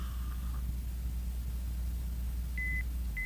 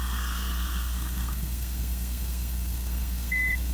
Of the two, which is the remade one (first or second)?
second